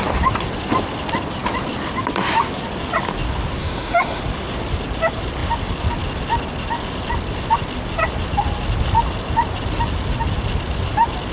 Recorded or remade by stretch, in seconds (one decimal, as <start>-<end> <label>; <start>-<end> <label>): 0.0-3.6 recorded; 3.6-4.2 remade; 4.2-11.3 recorded